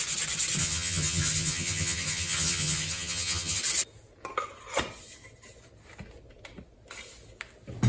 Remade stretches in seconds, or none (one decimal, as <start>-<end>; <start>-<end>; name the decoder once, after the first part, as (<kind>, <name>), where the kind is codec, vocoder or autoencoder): 0.6-3.6 (vocoder, HiFi-GAN)